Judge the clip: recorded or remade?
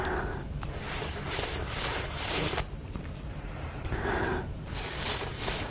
remade